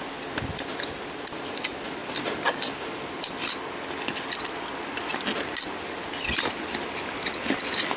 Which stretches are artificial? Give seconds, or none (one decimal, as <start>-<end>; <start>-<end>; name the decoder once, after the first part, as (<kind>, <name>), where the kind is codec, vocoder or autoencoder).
none